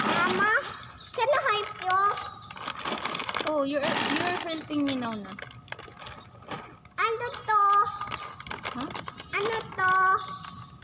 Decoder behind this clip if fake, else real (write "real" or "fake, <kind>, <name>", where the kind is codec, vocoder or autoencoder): real